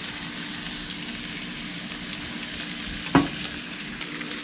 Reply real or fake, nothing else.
real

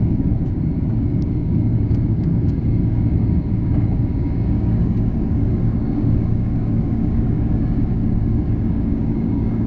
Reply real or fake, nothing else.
fake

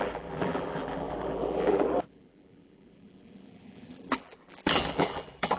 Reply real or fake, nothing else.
fake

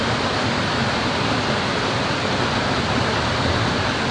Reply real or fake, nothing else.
fake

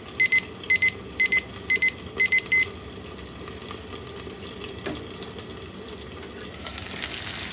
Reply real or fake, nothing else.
real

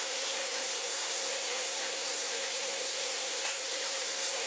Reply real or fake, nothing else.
fake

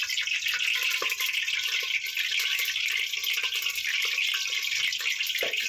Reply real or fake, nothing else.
real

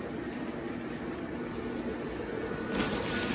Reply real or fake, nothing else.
real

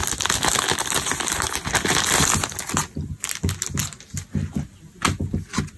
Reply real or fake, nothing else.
real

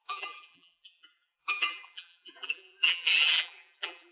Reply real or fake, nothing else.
fake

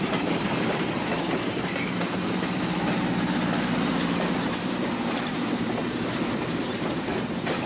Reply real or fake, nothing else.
fake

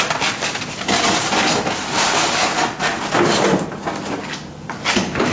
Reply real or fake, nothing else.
real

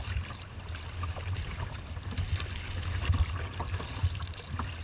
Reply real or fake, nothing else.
real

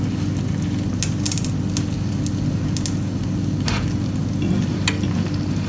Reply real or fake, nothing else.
real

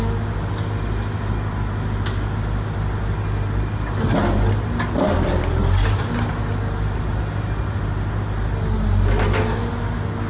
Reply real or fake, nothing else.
real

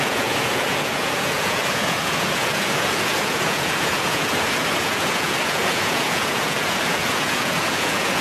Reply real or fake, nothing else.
fake